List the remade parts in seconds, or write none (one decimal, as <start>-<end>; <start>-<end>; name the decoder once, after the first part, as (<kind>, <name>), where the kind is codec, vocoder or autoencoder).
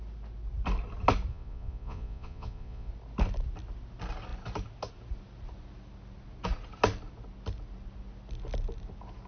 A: 1.3-2.9 (vocoder, Vocos)